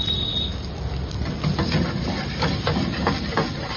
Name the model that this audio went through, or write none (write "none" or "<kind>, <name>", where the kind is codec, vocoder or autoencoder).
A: none